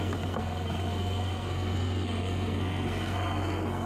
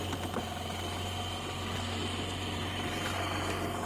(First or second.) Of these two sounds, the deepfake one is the first